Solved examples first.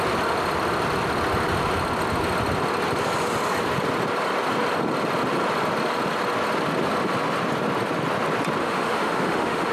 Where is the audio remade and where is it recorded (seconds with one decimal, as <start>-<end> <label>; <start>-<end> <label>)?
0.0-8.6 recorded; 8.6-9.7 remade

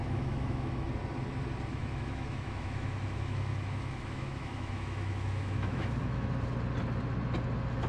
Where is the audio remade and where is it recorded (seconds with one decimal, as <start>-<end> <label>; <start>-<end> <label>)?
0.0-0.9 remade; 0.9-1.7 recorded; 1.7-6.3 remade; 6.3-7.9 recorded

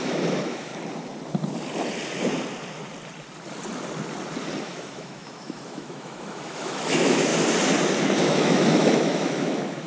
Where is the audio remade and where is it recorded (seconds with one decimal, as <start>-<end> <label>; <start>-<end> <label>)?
0.0-0.7 remade; 0.7-4.6 recorded; 4.6-7.3 remade; 7.3-8.2 recorded; 8.2-9.9 remade